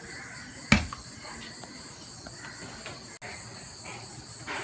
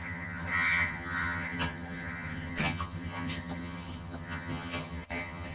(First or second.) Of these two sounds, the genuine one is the first